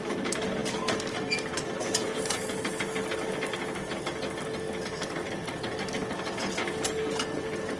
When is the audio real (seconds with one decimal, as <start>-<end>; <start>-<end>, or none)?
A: 0.0-7.8